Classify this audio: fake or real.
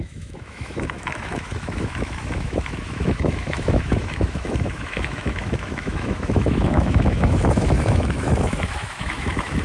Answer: fake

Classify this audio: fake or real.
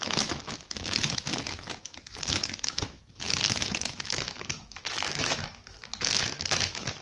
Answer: fake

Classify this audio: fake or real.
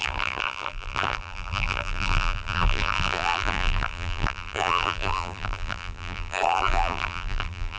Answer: fake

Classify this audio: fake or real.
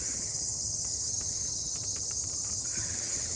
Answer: fake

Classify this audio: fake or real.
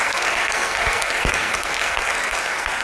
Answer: fake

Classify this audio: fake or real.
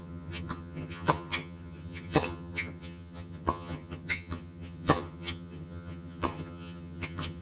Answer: fake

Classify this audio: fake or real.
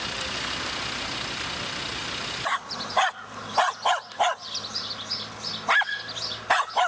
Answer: real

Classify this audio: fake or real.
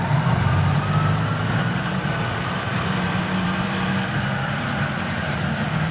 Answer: fake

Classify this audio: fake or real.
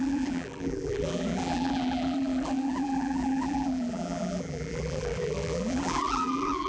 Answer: fake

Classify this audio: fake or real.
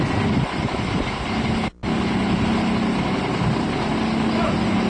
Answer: real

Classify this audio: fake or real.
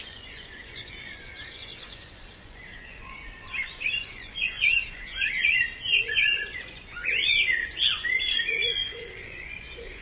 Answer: fake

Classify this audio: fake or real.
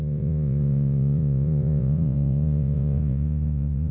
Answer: fake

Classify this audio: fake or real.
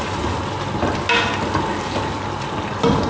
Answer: real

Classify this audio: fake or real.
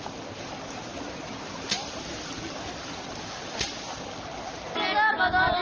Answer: real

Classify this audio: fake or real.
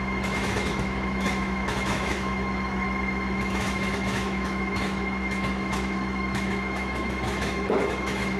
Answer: fake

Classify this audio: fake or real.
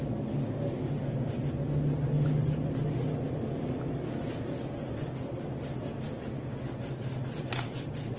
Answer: real